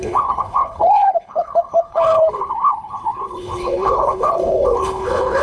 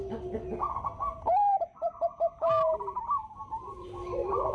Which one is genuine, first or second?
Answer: second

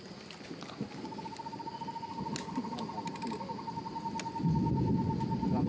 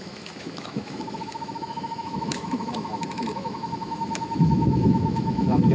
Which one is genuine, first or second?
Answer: first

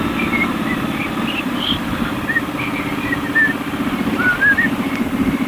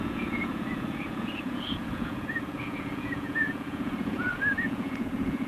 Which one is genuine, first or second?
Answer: first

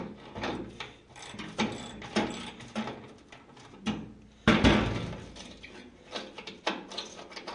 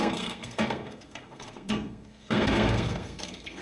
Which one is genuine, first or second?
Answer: first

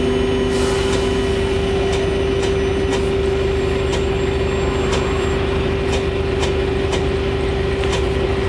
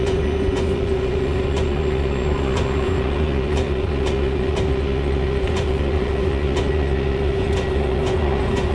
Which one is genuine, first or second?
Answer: first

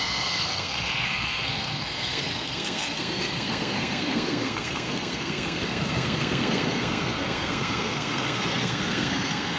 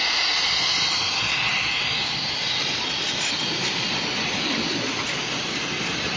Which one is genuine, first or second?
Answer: second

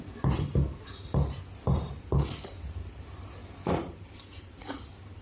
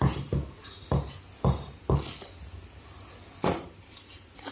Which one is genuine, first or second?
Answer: second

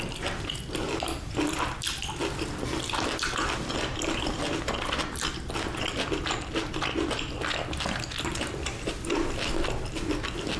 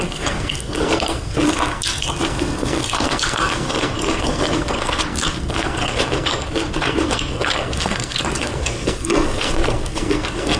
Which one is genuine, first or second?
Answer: first